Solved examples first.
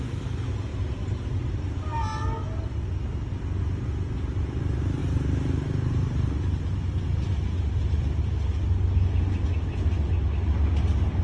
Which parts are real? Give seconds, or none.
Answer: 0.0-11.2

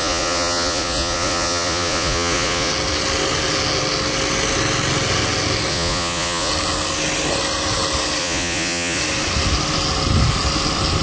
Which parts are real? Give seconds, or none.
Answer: 2.7-5.7; 6.5-8.2; 9.0-11.0

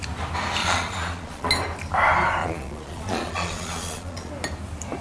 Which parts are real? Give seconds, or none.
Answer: 0.0-0.6; 1.5-2.4; 4.3-5.0